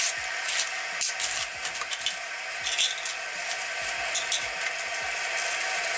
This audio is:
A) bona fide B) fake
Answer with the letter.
A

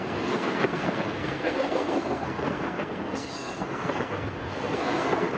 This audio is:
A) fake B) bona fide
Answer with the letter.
A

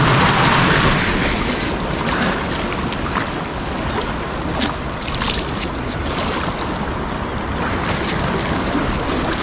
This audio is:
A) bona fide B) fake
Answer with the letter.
A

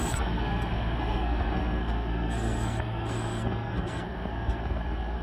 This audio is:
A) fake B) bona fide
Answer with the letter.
A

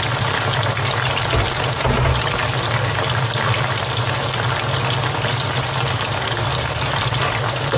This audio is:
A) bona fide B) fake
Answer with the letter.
A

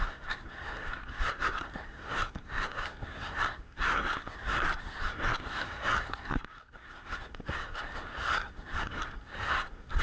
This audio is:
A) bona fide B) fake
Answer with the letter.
B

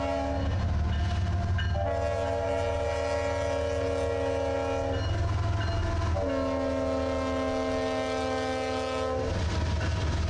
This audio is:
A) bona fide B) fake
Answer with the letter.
A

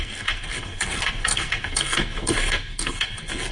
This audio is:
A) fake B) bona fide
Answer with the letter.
A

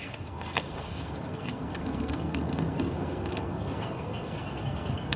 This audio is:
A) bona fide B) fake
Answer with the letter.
B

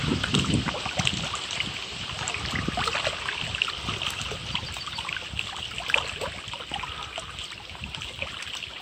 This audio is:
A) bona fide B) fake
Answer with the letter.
A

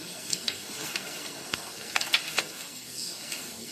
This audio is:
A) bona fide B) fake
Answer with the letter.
B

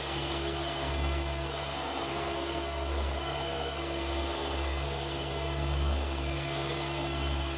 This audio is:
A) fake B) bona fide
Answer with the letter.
A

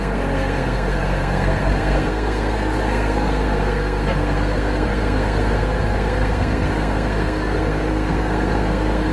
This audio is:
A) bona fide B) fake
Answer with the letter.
B